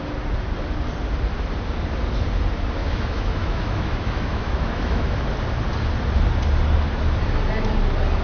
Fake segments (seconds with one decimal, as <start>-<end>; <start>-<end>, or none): 2.8-5.3